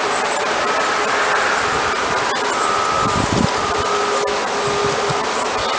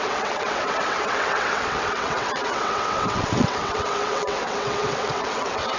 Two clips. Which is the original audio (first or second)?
first